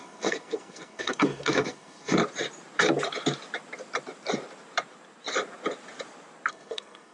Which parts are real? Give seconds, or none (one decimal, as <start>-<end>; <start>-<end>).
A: 2.2-6.5